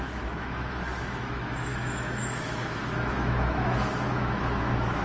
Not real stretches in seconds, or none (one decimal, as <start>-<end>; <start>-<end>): 0.0-5.0